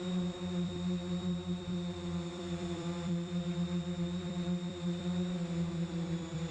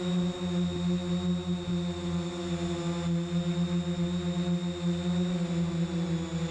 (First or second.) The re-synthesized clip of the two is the first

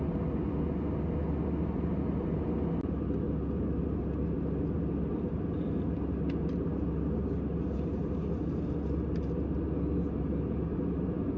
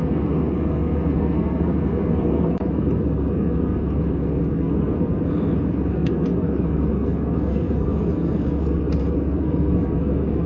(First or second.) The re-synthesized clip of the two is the second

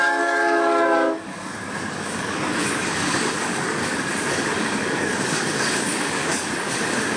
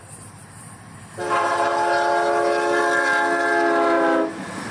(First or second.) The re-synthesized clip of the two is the first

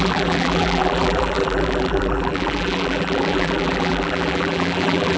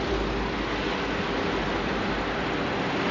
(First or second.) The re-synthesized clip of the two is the first